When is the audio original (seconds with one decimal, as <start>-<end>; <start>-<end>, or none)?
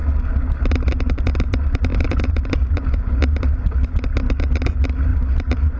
0.0-1.9; 3.1-5.1